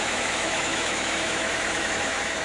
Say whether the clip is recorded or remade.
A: remade